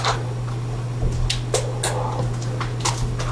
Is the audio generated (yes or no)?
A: no